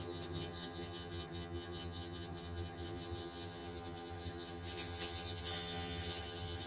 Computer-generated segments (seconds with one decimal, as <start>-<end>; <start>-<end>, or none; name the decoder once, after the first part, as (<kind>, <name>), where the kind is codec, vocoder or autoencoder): 0.0-6.7 (vocoder, HiFi-GAN)